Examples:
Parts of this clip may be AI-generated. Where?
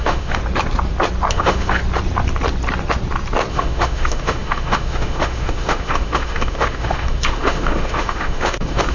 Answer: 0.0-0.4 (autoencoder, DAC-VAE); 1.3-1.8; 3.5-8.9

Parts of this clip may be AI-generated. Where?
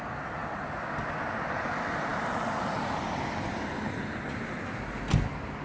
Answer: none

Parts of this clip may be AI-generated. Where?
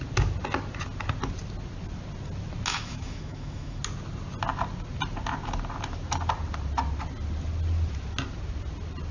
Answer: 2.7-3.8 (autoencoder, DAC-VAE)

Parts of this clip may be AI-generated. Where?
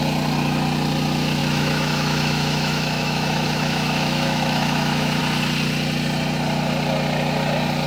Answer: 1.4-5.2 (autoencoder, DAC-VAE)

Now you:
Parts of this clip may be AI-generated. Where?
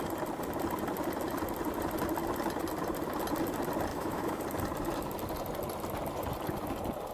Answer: 3.9-4.4 (autoencoder, DAC-VAE)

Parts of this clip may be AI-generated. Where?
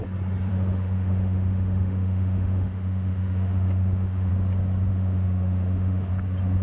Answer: 0.5-4.3 (autoencoder, DAC-VAE); 4.9-6.1